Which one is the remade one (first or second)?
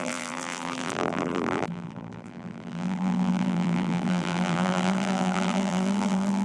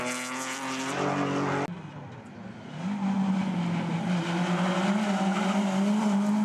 first